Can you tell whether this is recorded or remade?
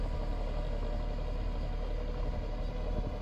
recorded